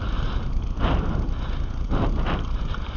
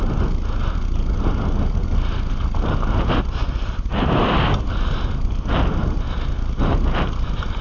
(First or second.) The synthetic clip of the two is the first